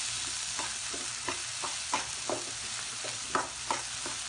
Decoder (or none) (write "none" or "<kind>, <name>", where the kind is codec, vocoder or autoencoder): none